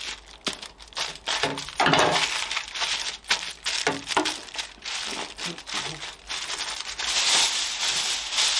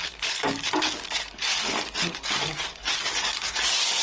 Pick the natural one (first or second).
first